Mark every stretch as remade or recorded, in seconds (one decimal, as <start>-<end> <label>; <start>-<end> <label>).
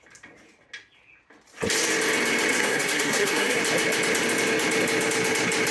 0.0-2.5 recorded; 2.5-3.6 remade; 3.6-5.7 recorded